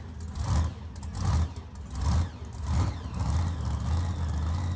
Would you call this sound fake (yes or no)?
no